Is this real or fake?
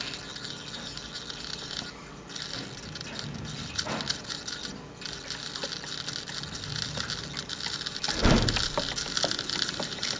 real